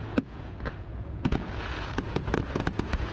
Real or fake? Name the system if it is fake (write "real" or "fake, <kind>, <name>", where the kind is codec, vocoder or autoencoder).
fake, vocoder, Vocos